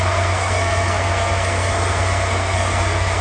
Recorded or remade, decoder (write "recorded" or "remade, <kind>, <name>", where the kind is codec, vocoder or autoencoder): remade, codec, SNAC